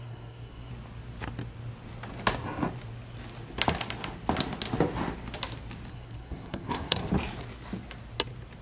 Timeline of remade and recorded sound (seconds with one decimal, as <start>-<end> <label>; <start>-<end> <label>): 0.0-0.7 remade; 0.7-5.9 recorded; 5.9-7.0 remade; 7.0-8.6 recorded